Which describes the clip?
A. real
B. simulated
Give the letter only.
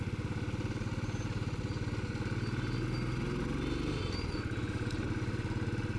A